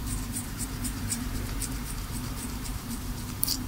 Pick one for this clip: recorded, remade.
remade